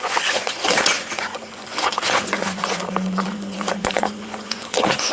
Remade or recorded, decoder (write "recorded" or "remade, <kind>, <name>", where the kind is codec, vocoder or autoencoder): remade, vocoder, Vocos